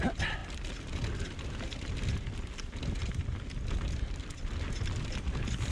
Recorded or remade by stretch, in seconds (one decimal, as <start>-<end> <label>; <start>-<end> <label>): 0.0-5.7 recorded